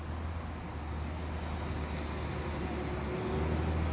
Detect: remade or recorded recorded